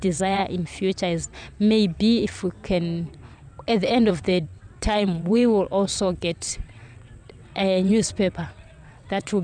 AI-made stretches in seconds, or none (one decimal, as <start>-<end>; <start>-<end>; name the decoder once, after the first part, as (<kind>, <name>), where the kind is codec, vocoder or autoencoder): 0.0-0.4 (vocoder, WaveNeXt); 4.1-9.4